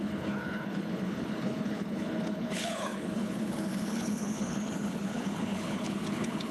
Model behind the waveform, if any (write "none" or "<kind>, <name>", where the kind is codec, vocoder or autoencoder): codec, HILCodec